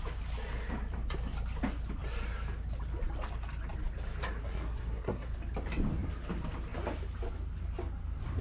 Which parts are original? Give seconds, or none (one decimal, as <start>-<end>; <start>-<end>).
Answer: 0.0-4.4; 5.3-8.4